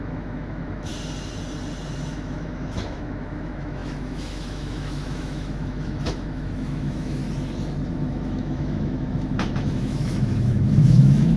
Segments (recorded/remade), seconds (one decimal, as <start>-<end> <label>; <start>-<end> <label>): 0.0-0.9 remade; 0.9-2.1 recorded; 2.1-7.2 remade; 7.2-8.0 recorded; 8.0-11.4 remade